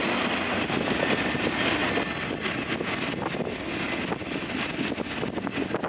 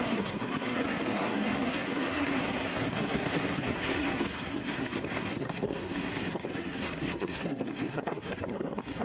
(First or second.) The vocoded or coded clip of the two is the second